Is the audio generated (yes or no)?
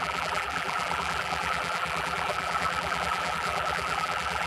yes